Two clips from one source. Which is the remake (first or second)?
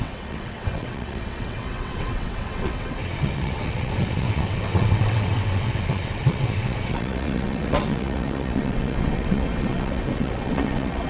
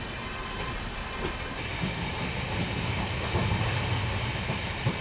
first